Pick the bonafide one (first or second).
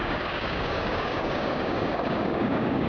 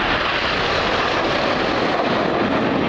second